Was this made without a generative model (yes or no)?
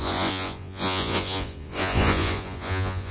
no